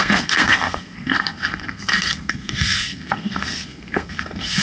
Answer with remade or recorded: remade